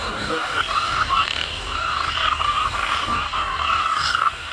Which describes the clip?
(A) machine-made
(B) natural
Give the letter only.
A